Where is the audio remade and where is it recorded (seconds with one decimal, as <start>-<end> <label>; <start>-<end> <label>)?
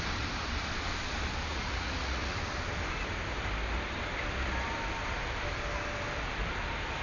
0.0-1.5 recorded; 1.5-2.4 remade; 2.4-7.0 recorded